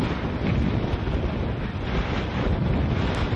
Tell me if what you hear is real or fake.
real